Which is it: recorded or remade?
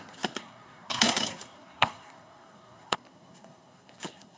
remade